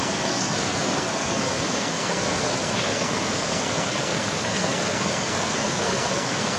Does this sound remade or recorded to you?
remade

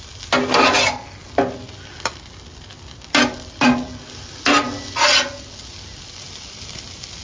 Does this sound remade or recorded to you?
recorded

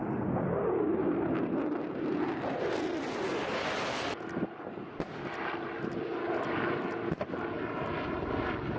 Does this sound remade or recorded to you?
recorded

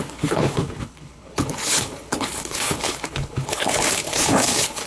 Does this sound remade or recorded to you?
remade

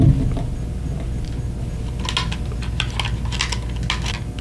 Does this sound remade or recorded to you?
recorded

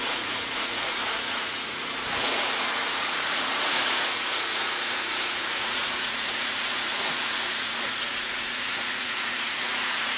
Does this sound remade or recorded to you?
remade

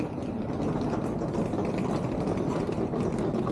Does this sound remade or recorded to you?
recorded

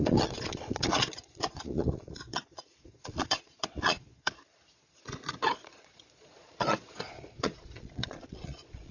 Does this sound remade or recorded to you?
remade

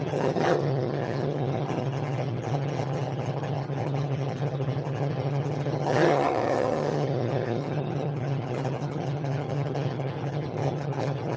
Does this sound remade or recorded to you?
remade